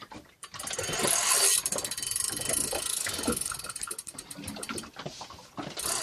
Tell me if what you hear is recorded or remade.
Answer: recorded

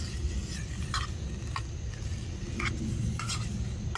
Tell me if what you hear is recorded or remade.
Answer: recorded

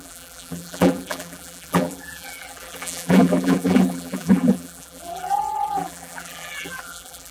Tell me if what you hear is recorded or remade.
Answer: remade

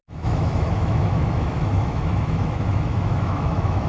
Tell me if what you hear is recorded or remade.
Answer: remade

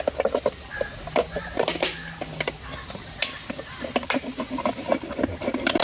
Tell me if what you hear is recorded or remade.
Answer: recorded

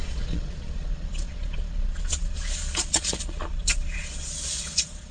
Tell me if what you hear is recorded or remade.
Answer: remade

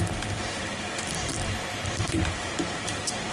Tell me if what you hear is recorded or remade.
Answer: remade